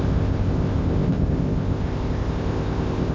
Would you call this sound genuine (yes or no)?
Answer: no